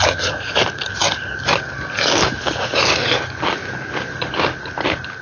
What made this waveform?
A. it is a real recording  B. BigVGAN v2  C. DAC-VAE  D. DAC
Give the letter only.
A